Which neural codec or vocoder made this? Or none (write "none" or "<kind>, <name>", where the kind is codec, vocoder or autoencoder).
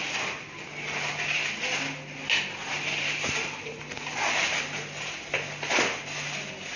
none